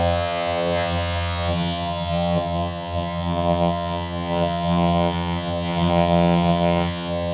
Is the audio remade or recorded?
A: remade